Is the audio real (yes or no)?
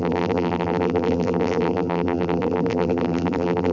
no